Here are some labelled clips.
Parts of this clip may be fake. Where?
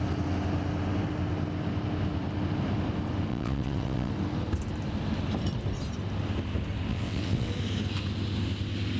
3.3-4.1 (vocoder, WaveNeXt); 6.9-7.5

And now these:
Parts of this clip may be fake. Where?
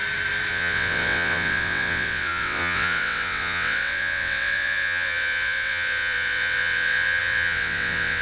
0.5-8.2 (vocoder, WaveNeXt)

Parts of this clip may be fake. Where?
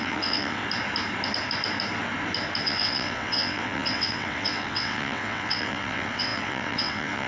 0.0-0.6 (vocoder, WaveNeXt); 2.6-7.3